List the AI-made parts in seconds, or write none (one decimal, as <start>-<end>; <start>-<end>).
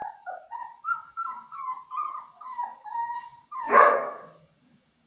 0.0-1.6; 2.2-5.1